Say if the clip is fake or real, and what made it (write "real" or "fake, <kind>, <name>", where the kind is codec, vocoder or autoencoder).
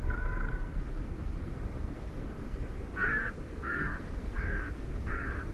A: fake, codec, SNAC